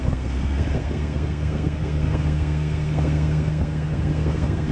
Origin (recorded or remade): remade